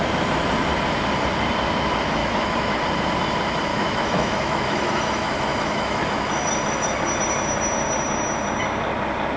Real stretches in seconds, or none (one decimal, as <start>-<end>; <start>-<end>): 0.0-2.2; 2.8-3.7; 6.0-9.4